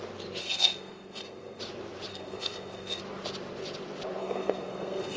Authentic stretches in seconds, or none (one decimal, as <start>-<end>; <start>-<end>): 0.0-0.4; 1.6-2.1; 3.0-4.2

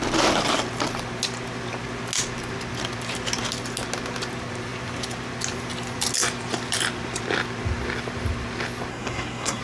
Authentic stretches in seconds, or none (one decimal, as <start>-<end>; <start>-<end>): 0.0-8.9

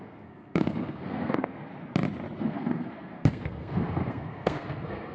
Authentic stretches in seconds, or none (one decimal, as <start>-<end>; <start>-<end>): 1.7-2.4